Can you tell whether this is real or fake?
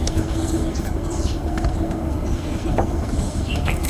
fake